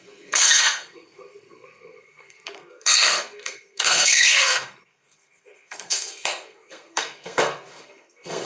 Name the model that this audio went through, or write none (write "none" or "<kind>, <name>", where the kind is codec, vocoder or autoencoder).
codec, SNAC